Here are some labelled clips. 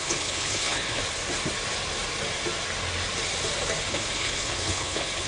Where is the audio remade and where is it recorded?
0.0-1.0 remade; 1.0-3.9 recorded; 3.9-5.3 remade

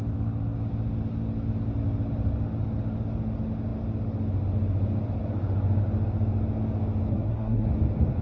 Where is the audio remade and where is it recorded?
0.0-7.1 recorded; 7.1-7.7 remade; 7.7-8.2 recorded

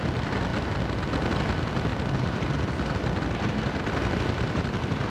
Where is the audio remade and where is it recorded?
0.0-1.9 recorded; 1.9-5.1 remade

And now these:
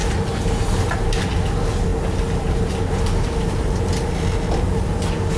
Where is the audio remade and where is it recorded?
0.0-5.4 recorded

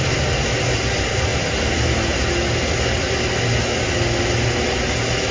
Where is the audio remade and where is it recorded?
0.0-5.3 recorded

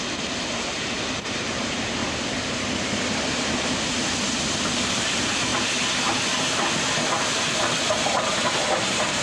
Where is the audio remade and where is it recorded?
0.0-2.0 remade; 2.0-4.9 recorded; 4.9-5.5 remade; 5.5-7.3 recorded; 7.3-9.2 remade